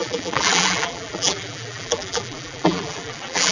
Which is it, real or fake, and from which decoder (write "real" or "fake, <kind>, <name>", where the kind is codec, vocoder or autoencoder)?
fake, vocoder, BigVGAN v2